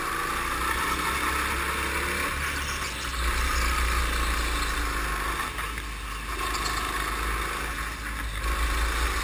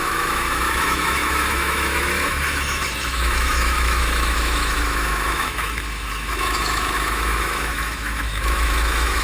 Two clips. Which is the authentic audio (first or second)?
first